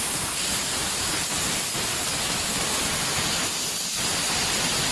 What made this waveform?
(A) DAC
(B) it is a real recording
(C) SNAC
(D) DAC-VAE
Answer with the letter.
B